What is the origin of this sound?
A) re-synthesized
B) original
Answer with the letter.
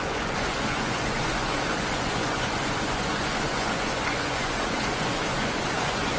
A